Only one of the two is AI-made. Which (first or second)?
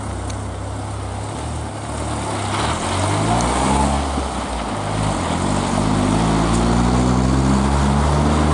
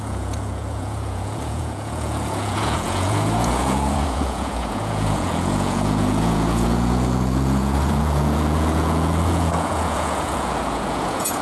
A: second